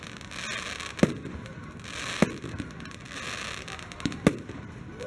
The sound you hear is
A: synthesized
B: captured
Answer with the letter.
B